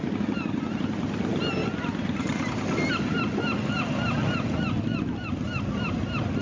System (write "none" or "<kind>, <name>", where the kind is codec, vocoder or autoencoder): none